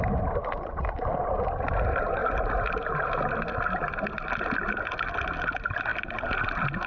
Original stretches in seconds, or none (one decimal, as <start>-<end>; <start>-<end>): 0.0-6.9